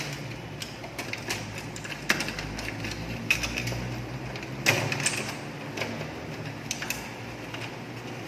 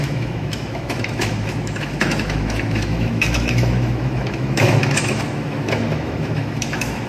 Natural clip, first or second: first